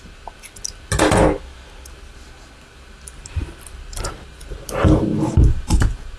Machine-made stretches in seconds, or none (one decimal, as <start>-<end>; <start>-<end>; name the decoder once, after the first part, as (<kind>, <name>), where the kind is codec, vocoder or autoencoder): none